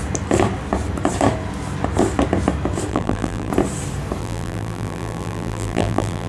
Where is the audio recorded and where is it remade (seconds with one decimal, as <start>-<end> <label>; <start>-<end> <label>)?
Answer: 0.0-2.9 recorded; 2.9-3.5 remade; 3.5-4.2 recorded; 4.2-6.3 remade